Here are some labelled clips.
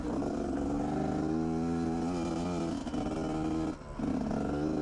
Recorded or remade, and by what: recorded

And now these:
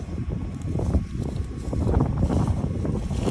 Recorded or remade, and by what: remade, vocoder, BigVGAN v2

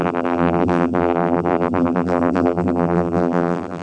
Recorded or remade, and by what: remade, vocoder, BigVGAN v2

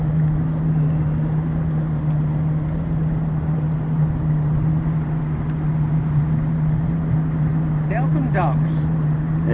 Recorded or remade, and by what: recorded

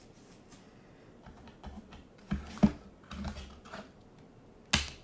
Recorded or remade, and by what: recorded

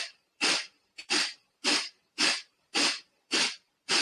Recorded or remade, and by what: remade, vocoder, BigVGAN v2